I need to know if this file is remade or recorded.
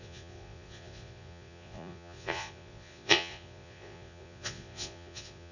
remade